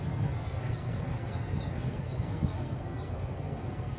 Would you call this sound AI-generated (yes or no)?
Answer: yes